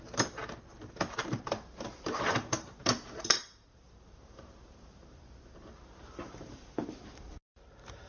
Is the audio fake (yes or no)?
yes